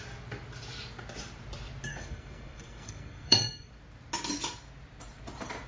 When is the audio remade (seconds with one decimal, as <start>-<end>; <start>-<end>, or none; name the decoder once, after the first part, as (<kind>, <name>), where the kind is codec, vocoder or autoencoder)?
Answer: 1.9-3.7 (codec, SNAC)